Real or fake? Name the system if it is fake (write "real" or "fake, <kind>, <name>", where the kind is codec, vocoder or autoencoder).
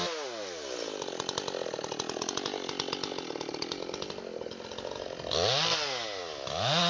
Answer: real